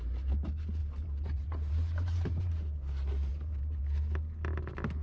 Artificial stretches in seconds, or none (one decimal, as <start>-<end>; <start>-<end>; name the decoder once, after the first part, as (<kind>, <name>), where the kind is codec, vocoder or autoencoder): 0.8-2.5 (vocoder, BigVGAN v2); 3.3-3.8